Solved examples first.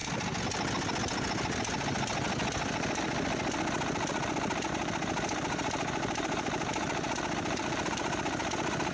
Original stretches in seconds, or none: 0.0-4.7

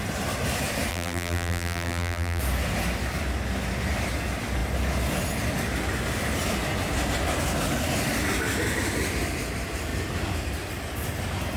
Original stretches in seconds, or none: 0.0-0.9; 2.4-11.6

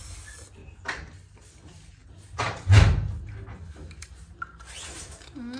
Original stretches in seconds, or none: 0.0-0.6; 1.5-5.6